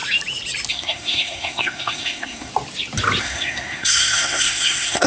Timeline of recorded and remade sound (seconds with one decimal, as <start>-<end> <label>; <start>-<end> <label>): 0.0-0.7 recorded; 0.7-2.5 remade; 2.5-3.2 recorded; 3.2-5.1 remade